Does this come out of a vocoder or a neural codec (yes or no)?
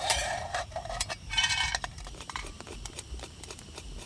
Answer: yes